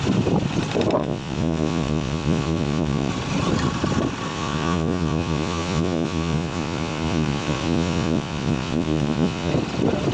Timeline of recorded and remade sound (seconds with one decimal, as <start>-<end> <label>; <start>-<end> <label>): 0.0-1.0 recorded; 1.0-3.1 remade; 3.1-4.3 recorded; 4.3-9.5 remade; 9.5-10.1 recorded